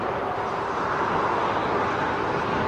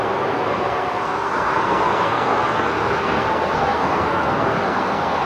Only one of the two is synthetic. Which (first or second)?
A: second